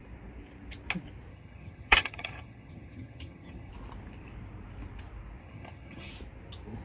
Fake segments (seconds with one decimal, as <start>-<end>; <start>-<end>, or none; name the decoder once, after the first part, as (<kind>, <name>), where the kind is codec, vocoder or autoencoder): 1.3-3.7 (vocoder, HiFi-GAN); 5.4-6.1